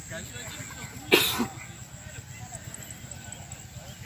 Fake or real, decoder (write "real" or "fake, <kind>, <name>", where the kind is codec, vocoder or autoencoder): real